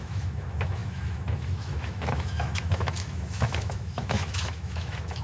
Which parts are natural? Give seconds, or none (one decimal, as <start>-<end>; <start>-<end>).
none